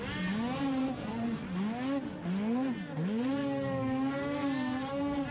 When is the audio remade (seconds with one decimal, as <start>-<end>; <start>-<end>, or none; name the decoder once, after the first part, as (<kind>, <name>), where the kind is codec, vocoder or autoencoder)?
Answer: none